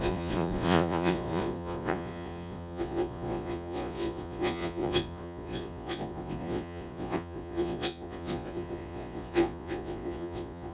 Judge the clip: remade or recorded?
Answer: remade